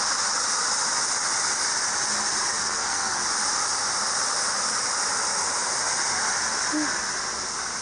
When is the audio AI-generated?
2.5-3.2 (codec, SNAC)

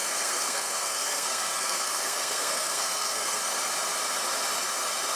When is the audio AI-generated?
0.0-3.4 (codec, SNAC)

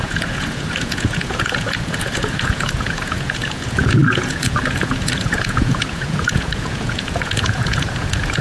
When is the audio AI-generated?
0.0-8.4 (vocoder, Vocos)